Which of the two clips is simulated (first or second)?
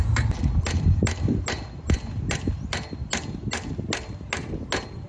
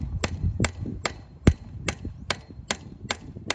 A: second